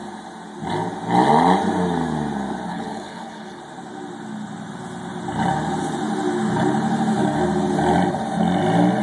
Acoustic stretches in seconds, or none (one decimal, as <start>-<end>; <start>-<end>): 0.0-2.7; 3.6-9.0

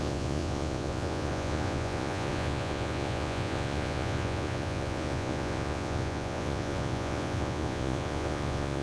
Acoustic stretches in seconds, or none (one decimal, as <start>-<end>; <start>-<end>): none